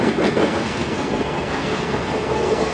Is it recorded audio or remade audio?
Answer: remade